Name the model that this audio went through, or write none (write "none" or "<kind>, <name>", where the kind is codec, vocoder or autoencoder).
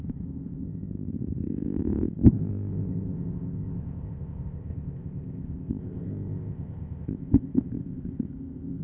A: codec, ZipCodec